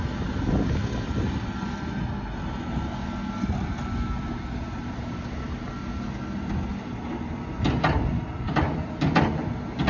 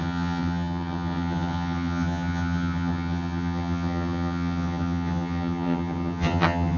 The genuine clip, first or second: first